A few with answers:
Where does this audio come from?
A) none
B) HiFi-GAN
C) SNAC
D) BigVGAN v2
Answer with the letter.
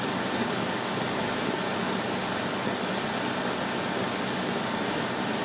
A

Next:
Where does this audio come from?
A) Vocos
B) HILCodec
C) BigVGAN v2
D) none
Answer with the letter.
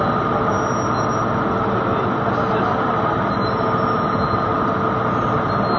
D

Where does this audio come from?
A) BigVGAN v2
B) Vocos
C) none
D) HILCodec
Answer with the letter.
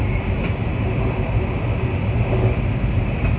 C